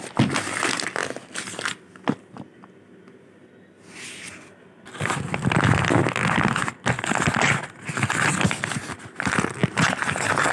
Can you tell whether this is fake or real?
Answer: real